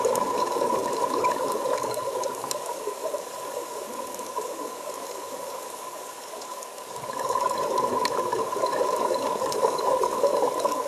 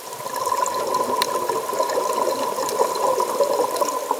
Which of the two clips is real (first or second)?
second